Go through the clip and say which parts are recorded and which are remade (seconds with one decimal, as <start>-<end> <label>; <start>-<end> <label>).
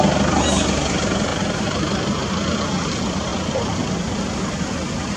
0.0-1.3 recorded; 1.3-2.6 remade; 2.6-5.2 recorded